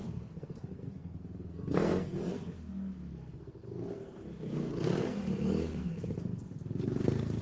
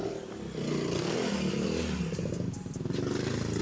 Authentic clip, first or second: second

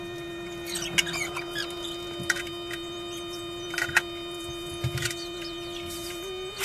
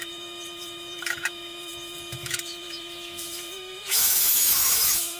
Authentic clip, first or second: first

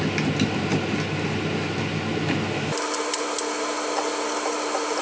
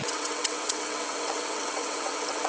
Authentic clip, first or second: first